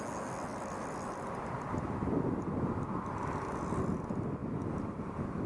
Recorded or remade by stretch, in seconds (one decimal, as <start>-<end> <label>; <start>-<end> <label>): 0.0-0.5 recorded; 0.5-2.4 remade; 2.4-4.4 recorded; 4.4-5.5 remade